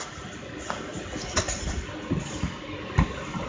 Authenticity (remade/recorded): recorded